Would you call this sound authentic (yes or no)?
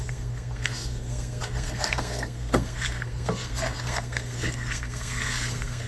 no